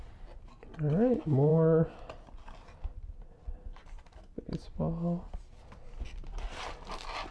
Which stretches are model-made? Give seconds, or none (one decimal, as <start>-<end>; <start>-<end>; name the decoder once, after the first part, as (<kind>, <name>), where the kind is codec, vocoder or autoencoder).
none